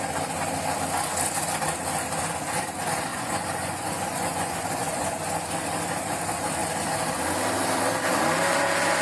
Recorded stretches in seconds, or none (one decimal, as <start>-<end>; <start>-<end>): 0.0-3.1; 5.2-9.0